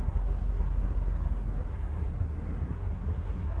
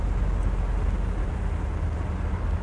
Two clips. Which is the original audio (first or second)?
second